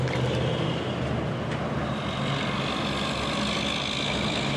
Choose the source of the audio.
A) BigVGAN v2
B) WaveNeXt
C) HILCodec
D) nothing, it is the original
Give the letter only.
D